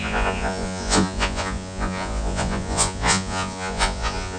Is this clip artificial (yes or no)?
yes